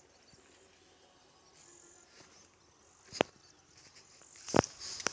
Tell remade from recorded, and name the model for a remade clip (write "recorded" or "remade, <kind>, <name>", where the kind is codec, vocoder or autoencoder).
recorded